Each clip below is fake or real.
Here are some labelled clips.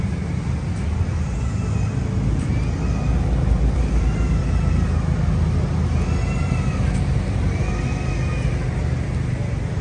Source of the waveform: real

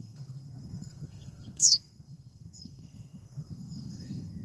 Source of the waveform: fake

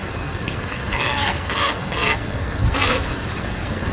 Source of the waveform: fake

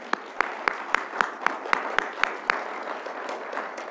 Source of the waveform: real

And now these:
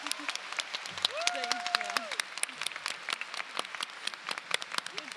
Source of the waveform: real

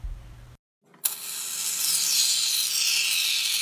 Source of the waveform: real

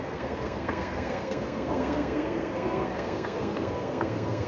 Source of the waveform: fake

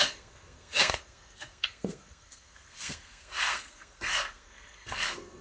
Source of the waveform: fake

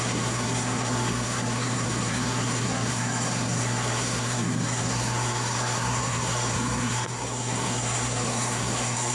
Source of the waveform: fake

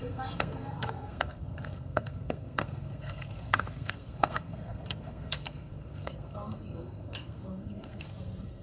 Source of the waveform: fake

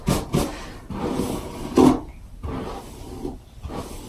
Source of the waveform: real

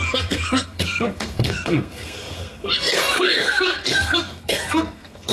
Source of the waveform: fake